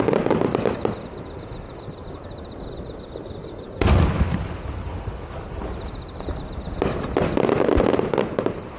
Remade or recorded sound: recorded